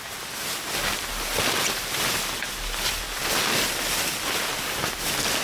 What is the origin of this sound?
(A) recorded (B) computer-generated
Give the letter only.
A